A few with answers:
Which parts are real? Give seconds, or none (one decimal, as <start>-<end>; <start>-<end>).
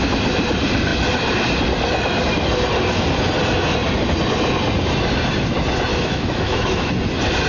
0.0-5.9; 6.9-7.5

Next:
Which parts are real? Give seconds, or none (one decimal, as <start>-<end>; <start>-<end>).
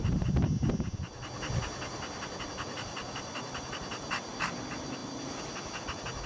0.0-6.3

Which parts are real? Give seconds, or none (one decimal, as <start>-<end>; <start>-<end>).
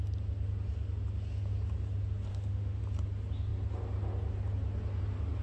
0.0-2.3; 2.8-5.4